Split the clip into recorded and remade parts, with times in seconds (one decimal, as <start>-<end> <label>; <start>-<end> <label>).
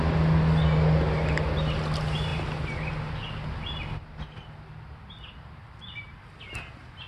0.0-7.1 recorded